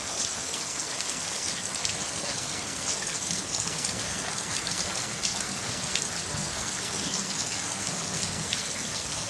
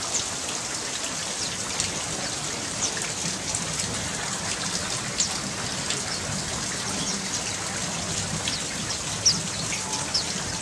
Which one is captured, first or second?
second